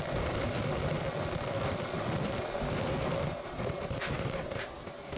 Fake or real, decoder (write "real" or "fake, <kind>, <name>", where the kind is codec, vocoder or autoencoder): real